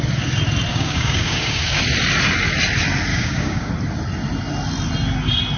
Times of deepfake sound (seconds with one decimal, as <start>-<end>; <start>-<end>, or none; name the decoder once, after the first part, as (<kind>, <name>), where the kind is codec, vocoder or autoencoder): 0.7-1.8 (codec, DAC); 3.1-3.7